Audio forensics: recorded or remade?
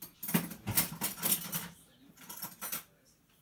recorded